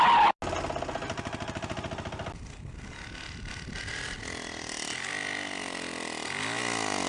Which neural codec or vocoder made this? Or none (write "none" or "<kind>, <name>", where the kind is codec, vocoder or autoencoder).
none